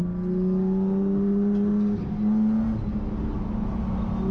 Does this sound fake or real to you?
real